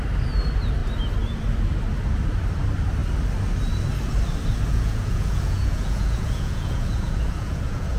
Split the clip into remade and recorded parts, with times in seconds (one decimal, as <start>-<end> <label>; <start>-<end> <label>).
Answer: 0.0-4.7 recorded; 4.7-8.0 remade